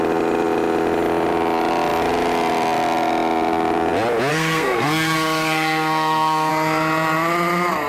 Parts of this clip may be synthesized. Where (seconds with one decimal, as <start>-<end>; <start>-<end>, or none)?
4.3-6.5